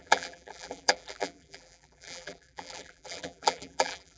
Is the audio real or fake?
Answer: fake